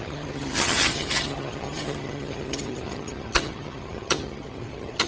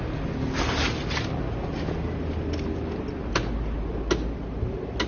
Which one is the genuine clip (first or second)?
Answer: second